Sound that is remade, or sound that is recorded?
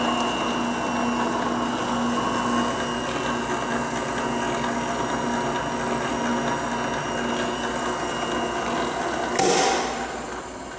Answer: recorded